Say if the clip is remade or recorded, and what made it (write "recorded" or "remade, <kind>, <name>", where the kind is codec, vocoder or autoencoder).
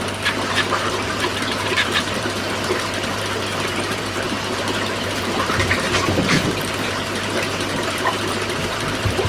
remade, vocoder, BigVGAN v2